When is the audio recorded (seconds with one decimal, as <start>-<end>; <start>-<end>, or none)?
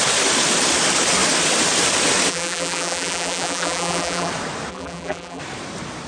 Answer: 0.0-2.3; 4.3-4.7; 5.4-6.1